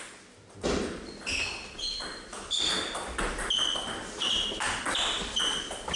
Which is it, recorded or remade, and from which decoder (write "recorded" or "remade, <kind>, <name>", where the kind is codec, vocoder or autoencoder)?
recorded